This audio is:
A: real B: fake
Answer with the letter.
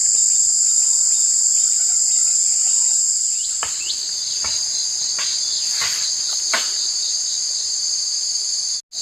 A